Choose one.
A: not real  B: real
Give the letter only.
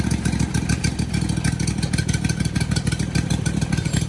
B